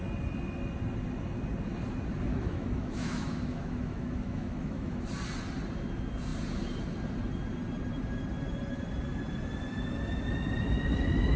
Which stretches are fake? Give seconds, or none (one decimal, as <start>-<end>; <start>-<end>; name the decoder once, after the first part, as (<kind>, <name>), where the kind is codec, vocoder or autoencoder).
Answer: 2.3-5.0 (autoencoder, DAC-VAE)